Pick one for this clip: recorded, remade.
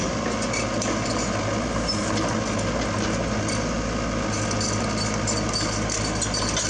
recorded